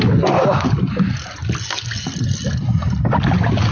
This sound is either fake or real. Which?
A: real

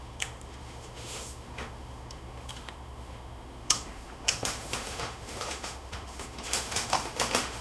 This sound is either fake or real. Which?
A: fake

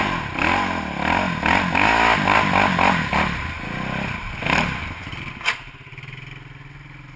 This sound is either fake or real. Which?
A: real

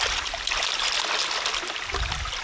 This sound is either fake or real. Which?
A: real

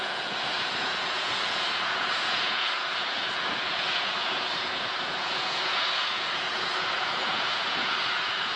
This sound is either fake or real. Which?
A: fake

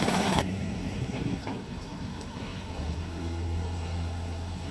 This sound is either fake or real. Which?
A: fake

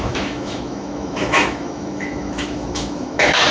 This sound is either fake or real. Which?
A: fake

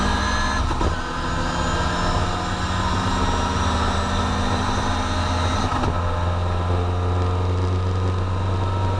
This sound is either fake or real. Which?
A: real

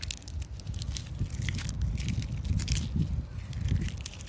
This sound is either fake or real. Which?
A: real